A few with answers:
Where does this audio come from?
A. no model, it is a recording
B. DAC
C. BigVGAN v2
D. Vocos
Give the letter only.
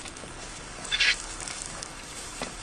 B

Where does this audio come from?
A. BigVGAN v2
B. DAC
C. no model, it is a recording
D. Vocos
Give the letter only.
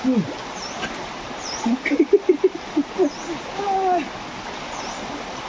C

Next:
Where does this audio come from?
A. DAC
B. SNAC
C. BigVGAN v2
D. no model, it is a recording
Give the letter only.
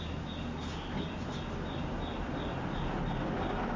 D